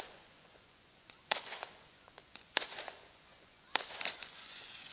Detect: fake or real fake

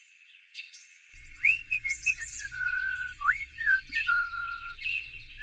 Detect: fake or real fake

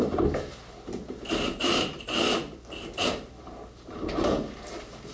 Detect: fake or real fake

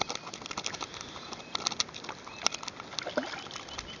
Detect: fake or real real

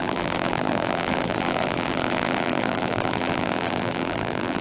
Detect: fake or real fake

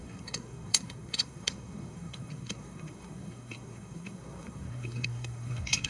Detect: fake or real fake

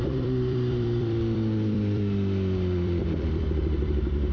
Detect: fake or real fake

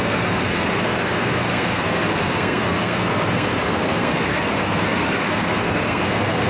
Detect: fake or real fake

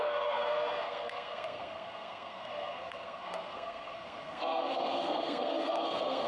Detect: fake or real fake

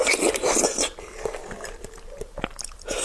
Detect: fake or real real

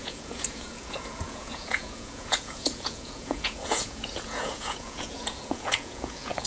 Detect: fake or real fake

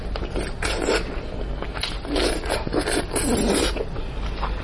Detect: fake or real real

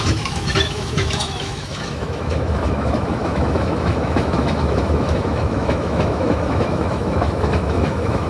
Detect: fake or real fake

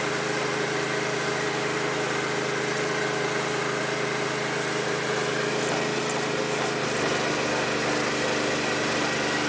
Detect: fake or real real